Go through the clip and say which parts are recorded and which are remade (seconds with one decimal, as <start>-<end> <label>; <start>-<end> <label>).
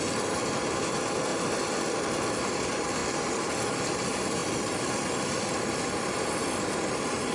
0.0-1.3 remade; 1.3-2.5 recorded; 2.5-3.0 remade; 3.0-3.5 recorded; 3.5-7.3 remade